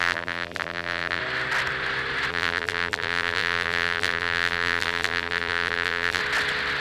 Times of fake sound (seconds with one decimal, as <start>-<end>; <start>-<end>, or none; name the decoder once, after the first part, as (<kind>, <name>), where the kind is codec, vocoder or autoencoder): 0.0-1.2 (vocoder, BigVGAN v2); 2.3-6.2